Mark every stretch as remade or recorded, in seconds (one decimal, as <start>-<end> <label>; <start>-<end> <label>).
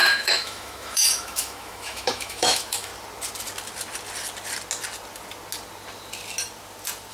0.0-2.9 remade; 2.9-7.1 recorded